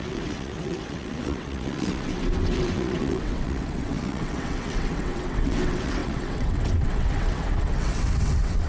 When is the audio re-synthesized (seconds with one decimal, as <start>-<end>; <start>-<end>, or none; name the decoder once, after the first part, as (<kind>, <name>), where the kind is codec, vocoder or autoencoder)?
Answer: 0.0-8.7 (vocoder, WaveNeXt)